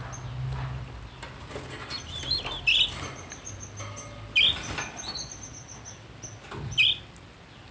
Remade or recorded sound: recorded